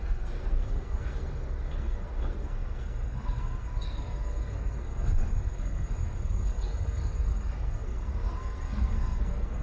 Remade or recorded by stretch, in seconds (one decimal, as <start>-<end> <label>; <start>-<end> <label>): 0.0-9.6 remade